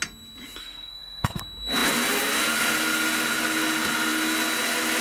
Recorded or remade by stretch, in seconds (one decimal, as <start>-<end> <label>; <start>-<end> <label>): 0.0-0.6 recorded; 0.6-1.4 remade; 1.4-5.0 recorded